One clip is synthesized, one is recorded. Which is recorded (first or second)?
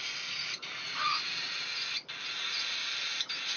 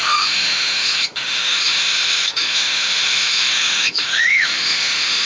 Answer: first